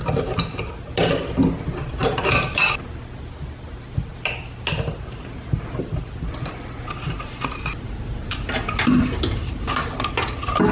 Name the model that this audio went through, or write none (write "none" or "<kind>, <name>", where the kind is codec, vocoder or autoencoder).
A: none